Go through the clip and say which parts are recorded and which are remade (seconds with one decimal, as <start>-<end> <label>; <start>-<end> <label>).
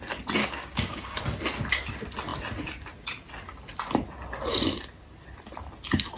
0.0-0.4 recorded; 0.4-1.2 remade; 1.2-6.2 recorded